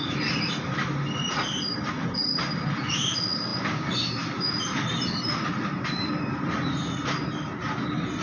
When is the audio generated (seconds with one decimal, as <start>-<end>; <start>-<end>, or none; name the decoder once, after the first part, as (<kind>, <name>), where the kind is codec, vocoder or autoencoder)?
none